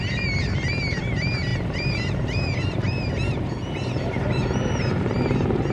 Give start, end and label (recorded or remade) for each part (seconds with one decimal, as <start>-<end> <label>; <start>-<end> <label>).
0.0-5.7 remade